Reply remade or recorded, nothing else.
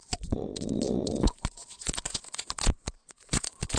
remade